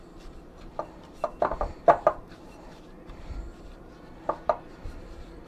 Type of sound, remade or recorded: remade